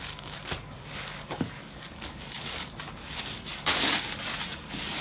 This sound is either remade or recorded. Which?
remade